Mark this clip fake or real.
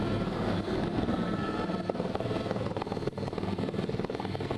fake